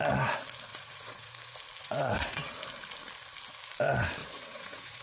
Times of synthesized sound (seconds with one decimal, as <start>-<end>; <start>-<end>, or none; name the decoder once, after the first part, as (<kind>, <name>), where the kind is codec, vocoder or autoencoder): 0.7-1.3 (vocoder, WaveNeXt); 1.8-2.6; 4.2-5.0